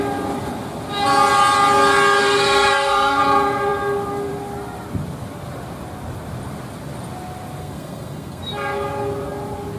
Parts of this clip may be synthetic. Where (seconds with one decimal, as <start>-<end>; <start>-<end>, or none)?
2.2-3.2; 7.6-8.4